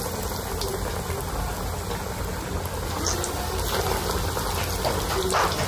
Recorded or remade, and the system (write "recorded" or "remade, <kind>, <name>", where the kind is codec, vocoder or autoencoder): recorded